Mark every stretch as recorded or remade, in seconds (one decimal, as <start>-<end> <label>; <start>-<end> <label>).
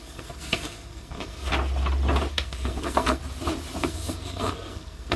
0.0-1.5 remade; 1.5-2.3 recorded; 2.3-3.2 remade; 3.2-3.8 recorded; 3.8-5.2 remade